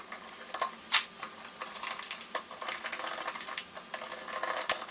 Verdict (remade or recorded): recorded